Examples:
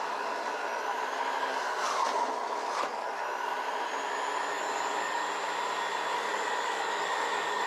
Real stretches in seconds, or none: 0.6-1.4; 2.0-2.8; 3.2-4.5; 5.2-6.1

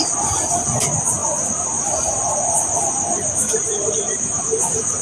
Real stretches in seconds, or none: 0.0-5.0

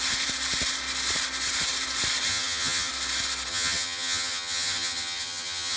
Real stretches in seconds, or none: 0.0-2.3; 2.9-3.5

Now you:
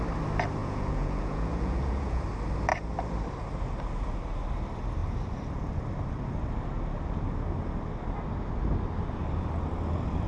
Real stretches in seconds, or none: 0.0-0.6; 2.2-10.3

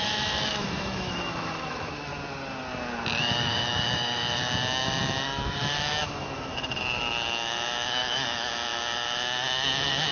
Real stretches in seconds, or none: 2.1-3.2

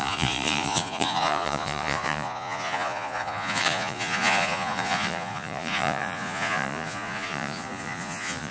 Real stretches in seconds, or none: none

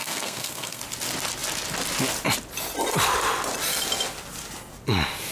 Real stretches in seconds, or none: 0.8-5.3